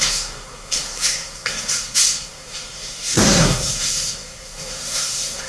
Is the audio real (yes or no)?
no